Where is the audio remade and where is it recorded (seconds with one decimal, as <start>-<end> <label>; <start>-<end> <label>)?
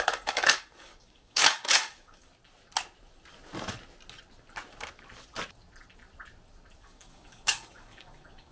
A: 0.0-2.3 remade; 2.3-6.8 recorded; 6.8-8.5 remade